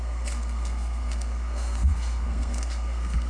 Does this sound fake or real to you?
fake